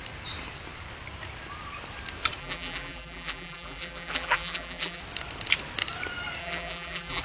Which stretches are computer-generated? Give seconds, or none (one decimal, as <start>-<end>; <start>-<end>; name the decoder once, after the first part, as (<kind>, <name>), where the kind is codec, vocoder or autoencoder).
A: 2.4-5.0 (vocoder, BigVGAN v2); 6.4-7.2